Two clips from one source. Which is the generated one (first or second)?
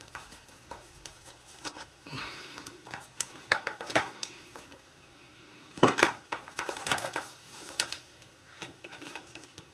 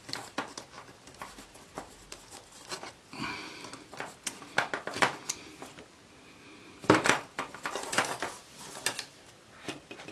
first